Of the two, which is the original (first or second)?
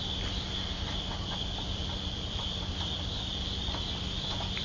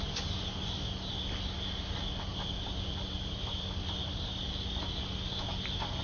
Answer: second